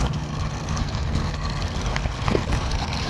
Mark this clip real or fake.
fake